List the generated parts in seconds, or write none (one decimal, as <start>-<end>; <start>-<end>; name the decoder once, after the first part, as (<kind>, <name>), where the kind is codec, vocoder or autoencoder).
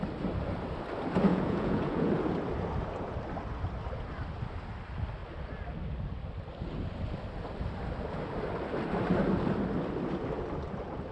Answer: 1.3-2.1 (vocoder, Vocos)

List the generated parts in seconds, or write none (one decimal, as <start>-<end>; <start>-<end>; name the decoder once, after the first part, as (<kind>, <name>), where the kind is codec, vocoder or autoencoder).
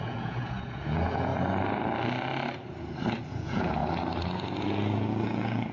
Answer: 0.0-1.3 (vocoder, Vocos); 3.3-3.8; 4.6-5.7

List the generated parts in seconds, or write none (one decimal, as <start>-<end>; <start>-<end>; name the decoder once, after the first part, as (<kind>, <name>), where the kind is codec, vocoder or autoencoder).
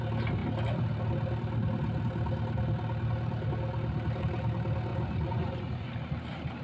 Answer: 4.9-5.9 (vocoder, Vocos)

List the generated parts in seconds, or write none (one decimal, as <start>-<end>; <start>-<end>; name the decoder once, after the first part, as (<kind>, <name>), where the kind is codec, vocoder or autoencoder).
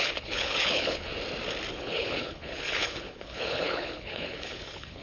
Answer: 0.0-1.1 (codec, HILCodec); 1.7-5.0